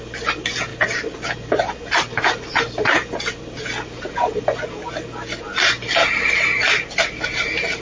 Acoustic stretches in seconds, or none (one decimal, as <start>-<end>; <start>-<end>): 0.0-7.8